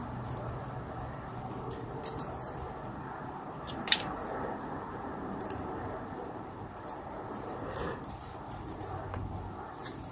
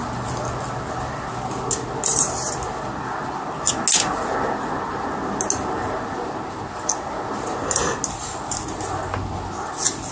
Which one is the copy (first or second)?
first